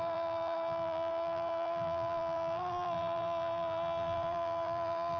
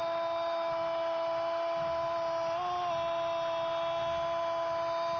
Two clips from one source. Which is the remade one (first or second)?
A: first